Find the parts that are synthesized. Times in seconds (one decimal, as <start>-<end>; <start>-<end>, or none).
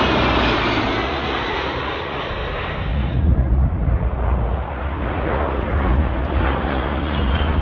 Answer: 1.0-2.3; 2.9-7.6